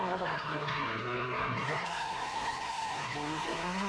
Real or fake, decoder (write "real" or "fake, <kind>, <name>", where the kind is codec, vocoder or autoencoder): fake, codec, SNAC